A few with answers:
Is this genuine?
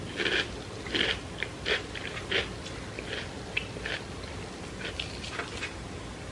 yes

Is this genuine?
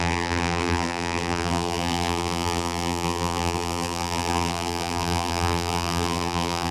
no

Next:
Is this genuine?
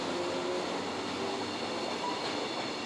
yes